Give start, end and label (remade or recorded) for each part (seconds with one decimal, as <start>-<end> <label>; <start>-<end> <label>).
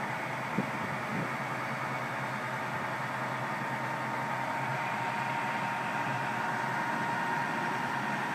0.0-4.7 recorded; 4.7-5.3 remade; 5.3-7.4 recorded; 7.4-8.3 remade